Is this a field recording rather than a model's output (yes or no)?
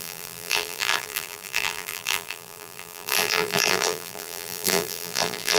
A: no